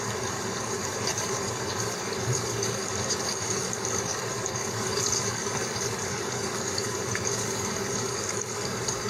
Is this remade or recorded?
remade